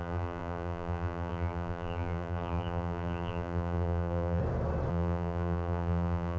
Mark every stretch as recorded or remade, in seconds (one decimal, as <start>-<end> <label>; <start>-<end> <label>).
0.0-4.4 remade; 4.4-4.9 recorded; 4.9-6.4 remade